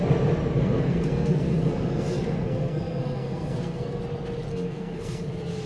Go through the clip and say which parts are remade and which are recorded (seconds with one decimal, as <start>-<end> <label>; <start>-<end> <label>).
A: 0.0-0.6 recorded; 0.6-4.0 remade; 4.0-4.5 recorded; 4.5-5.3 remade; 5.3-5.7 recorded